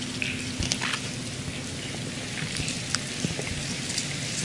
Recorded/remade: recorded